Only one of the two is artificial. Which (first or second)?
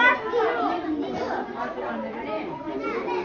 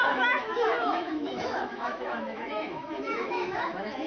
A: second